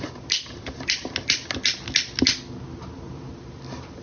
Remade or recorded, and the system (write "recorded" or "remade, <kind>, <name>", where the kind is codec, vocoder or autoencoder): recorded